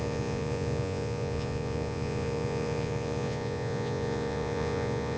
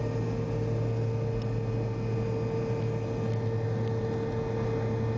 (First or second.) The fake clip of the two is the first